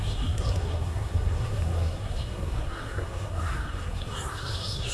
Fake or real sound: fake